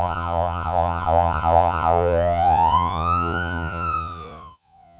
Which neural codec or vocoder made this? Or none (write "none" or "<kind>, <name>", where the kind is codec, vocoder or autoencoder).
vocoder, Vocos